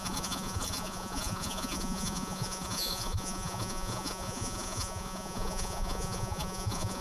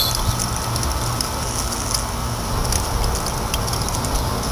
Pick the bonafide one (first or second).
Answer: second